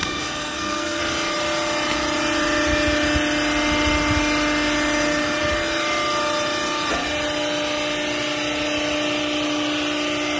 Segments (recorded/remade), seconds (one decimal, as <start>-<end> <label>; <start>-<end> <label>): 0.0-1.0 remade; 1.0-10.4 recorded